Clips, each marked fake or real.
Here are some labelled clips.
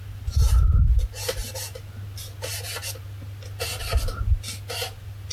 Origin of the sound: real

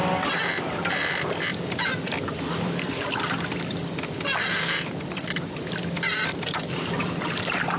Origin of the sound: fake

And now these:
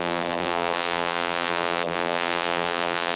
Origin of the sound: fake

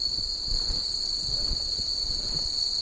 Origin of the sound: fake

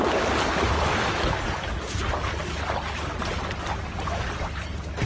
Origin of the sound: real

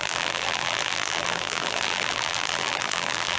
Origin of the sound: fake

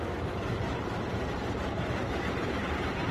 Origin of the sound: fake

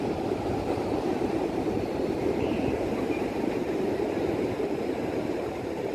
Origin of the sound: fake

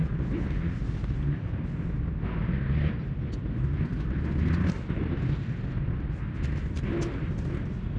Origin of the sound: real